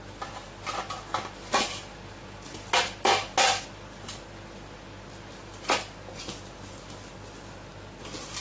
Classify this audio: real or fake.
real